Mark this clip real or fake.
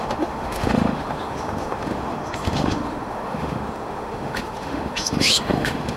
fake